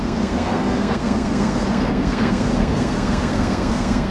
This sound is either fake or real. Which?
fake